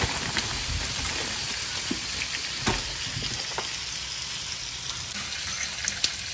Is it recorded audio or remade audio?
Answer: recorded